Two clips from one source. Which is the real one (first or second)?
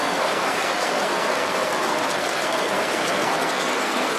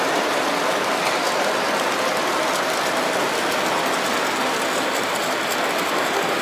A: second